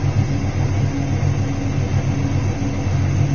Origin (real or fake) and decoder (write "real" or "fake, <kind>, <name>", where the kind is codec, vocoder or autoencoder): real